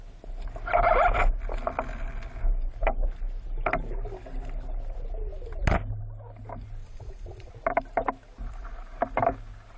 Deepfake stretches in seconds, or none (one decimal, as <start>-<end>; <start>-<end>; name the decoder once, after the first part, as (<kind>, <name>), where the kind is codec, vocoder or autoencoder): 6.8-7.5 (vocoder, Vocos)